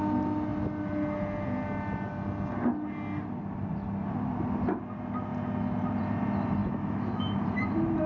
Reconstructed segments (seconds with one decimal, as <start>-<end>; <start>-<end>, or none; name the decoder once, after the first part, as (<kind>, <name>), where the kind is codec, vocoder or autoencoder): 6.6-7.3 (autoencoder, DAC-VAE)